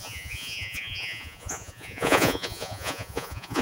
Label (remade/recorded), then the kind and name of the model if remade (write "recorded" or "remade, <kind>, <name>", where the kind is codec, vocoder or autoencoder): remade, vocoder, Vocos